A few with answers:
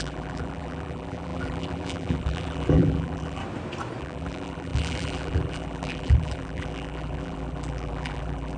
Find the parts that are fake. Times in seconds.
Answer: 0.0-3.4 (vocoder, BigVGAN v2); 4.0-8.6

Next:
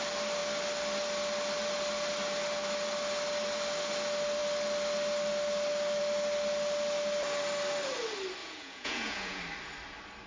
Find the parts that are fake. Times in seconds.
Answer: 8.4-9.4 (vocoder, Vocos)

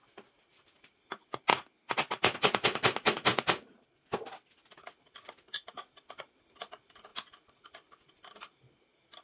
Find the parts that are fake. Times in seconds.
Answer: none

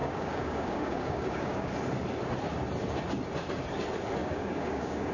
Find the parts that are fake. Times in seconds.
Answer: 0.0-1.7 (codec, DAC); 4.2-5.1

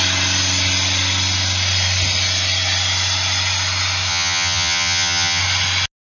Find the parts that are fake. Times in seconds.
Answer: 4.1-5.4 (vocoder, HiFi-GAN)

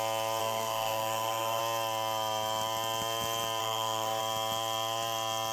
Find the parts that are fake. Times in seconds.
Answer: 0.4-1.6 (codec, SNAC); 3.6-4.2